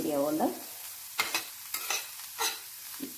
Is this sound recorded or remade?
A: recorded